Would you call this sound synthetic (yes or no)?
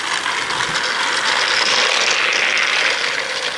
no